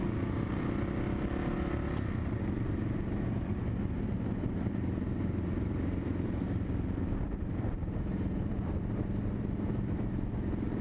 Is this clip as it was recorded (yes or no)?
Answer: yes